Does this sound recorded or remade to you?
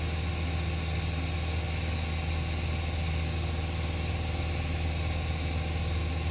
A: recorded